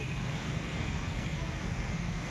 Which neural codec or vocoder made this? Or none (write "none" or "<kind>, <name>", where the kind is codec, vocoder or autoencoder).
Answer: codec, SNAC